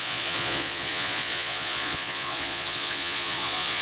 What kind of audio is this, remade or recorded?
remade